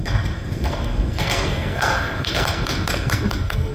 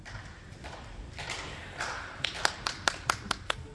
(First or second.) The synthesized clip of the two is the first